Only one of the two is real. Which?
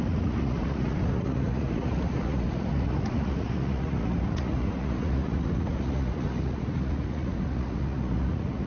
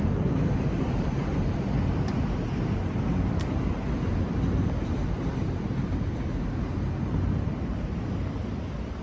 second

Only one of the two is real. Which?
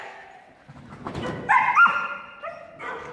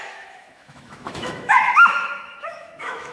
first